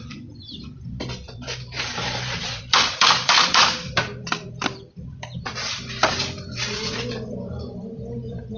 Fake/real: fake